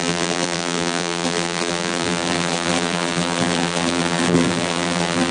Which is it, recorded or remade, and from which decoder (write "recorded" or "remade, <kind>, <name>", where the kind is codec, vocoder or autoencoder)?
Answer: remade, vocoder, BigVGAN v2